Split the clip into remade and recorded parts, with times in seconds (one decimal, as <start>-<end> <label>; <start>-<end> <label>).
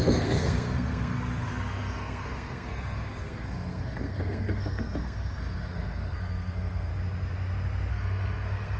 0.0-6.9 remade; 6.9-7.9 recorded; 7.9-8.8 remade